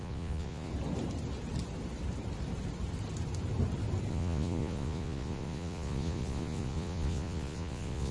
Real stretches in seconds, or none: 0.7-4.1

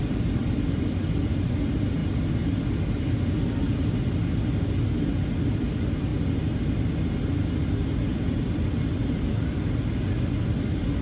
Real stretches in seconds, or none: 0.0-11.0